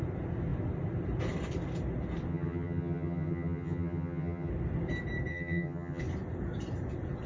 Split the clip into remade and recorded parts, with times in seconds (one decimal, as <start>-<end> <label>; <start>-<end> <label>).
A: 0.0-2.3 recorded; 2.3-4.5 remade; 4.5-5.3 recorded; 5.3-6.0 remade; 6.0-7.3 recorded